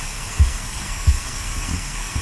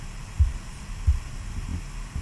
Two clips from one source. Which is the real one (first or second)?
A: second